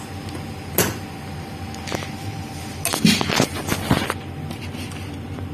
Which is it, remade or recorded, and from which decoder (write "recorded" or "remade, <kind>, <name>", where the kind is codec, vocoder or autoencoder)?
recorded